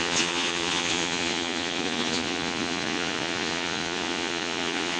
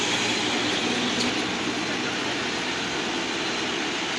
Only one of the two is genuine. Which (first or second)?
second